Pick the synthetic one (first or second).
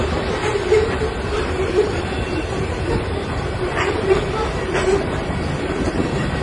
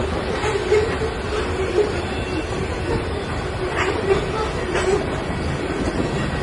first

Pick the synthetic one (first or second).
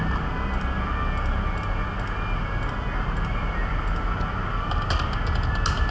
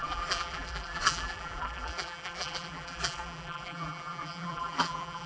second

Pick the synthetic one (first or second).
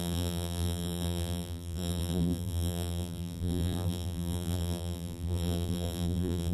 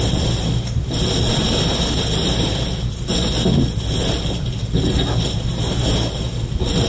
first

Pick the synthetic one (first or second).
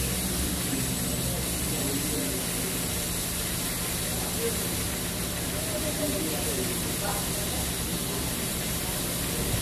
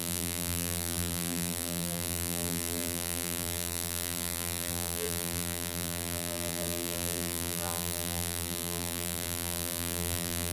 second